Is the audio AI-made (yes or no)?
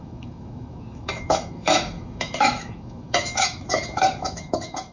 yes